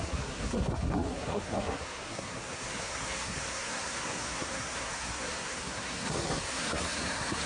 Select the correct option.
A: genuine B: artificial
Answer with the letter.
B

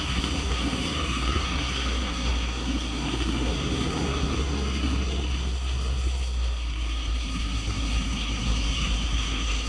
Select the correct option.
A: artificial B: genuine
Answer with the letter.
A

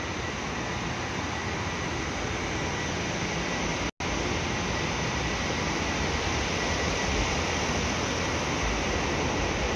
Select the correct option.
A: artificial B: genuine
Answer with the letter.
B